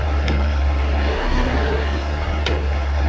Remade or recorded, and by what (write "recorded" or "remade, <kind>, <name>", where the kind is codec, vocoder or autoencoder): remade, codec, SNAC